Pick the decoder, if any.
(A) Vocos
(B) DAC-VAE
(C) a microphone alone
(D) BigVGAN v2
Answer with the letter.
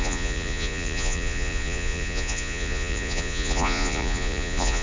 A